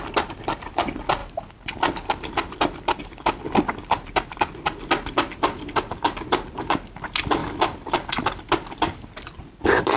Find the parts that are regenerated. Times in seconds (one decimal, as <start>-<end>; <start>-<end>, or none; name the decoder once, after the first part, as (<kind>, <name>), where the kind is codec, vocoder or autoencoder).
none